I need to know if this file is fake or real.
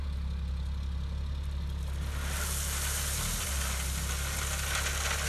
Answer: real